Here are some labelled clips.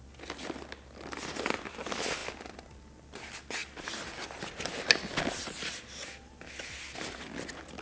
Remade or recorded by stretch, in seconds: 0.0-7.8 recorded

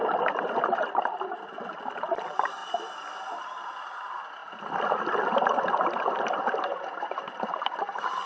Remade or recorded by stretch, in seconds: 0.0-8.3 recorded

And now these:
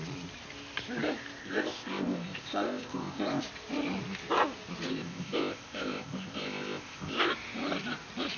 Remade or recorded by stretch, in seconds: 0.0-1.4 recorded; 1.4-3.4 remade; 3.4-4.9 recorded; 4.9-7.3 remade; 7.3-8.4 recorded

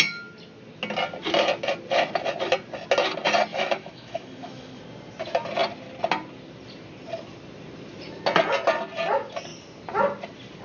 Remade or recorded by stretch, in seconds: 0.0-3.5 recorded; 3.5-4.8 remade; 4.8-10.6 recorded

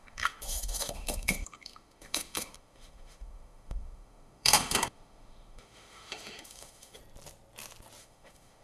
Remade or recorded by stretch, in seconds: 0.0-7.0 remade; 7.0-8.0 recorded; 8.0-8.6 remade

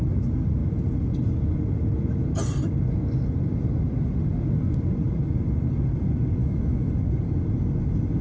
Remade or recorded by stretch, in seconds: 0.0-6.4 recorded; 6.4-6.9 remade; 6.9-8.2 recorded

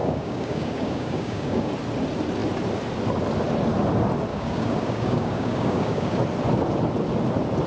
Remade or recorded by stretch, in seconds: 0.0-1.7 remade; 1.7-4.3 recorded; 4.3-6.2 remade; 6.2-7.7 recorded

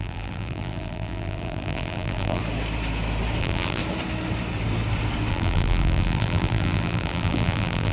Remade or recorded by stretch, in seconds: 0.0-2.4 remade; 2.4-3.4 recorded; 3.4-3.8 remade; 3.8-5.3 recorded; 5.3-7.9 remade